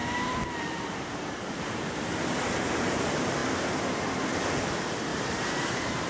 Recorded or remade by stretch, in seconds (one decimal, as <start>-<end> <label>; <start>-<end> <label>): 0.0-1.8 remade; 1.8-5.1 recorded; 5.1-6.1 remade